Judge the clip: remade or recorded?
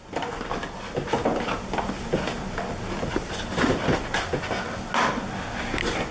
recorded